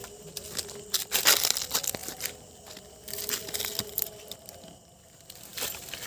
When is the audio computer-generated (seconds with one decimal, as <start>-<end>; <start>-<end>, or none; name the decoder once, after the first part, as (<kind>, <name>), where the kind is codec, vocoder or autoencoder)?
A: 2.0-3.6 (vocoder, BigVGAN v2)